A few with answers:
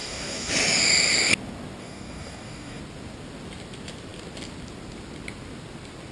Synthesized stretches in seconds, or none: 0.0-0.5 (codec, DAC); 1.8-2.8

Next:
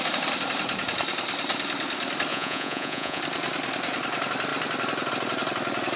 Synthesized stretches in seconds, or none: 2.3-3.2 (vocoder, Vocos)

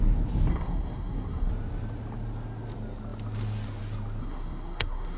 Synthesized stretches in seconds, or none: 0.5-1.5 (codec, SNAC); 4.2-5.2

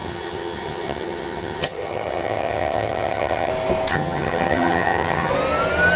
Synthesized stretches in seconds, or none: 0.0-3.5 (vocoder, HiFi-GAN); 3.9-5.3